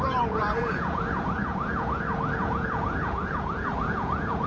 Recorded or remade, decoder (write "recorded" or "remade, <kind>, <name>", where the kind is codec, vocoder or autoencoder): remade, vocoder, Vocos